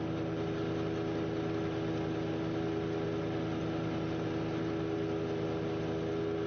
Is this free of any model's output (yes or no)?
yes